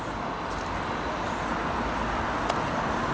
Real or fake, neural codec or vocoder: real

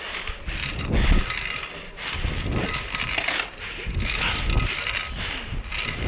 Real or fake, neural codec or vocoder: real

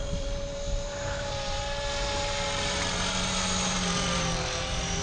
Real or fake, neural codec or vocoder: fake, vocoder, BigVGAN v2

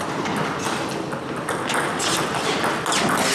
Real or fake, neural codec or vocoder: real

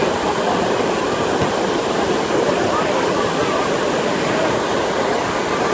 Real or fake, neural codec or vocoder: real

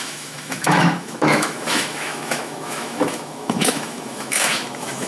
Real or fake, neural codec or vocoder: fake, autoencoder, DAC-VAE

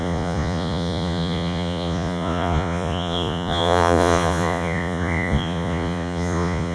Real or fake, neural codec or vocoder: fake, vocoder, Vocos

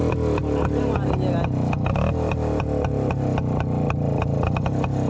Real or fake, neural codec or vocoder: real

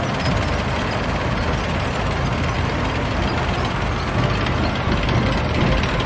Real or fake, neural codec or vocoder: real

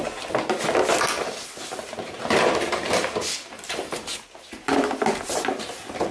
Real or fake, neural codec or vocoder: real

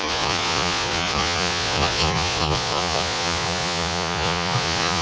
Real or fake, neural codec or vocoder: fake, vocoder, Vocos